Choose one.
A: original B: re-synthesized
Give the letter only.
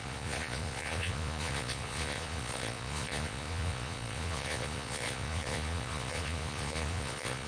B